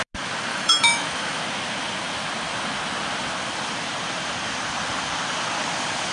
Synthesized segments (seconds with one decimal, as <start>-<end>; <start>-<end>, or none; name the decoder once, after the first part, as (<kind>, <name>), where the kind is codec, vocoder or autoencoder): 0.5-1.4 (autoencoder, DAC-VAE)